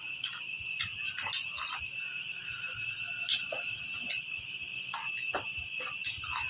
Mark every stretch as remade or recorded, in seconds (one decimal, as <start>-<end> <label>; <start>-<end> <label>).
0.0-6.5 recorded